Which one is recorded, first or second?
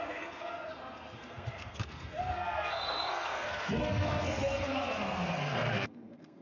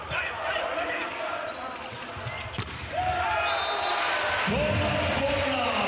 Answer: second